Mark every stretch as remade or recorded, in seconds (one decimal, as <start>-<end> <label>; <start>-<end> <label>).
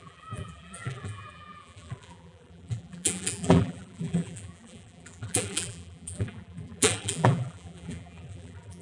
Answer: 0.0-8.8 remade